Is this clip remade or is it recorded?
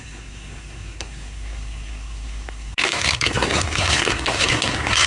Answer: remade